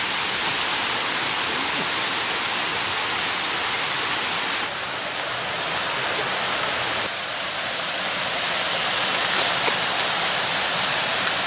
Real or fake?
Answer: real